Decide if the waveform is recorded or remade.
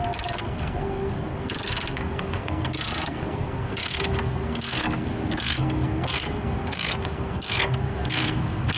remade